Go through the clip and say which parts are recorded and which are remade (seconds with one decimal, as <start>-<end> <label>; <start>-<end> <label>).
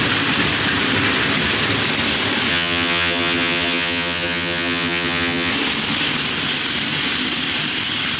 0.0-2.5 recorded; 2.5-5.5 remade; 5.5-8.2 recorded